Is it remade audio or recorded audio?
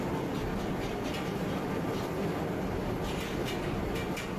recorded